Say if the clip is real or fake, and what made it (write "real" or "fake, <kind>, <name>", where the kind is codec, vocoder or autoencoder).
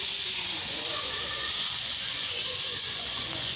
fake, vocoder, Vocos